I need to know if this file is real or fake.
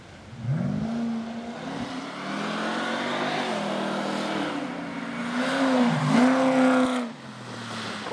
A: real